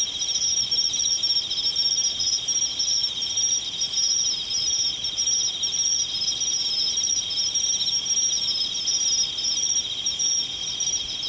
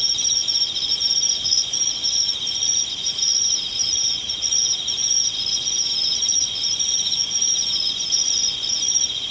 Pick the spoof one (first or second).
second